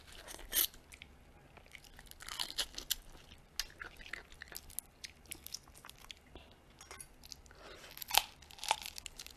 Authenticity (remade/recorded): recorded